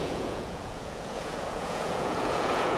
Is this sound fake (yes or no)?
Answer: yes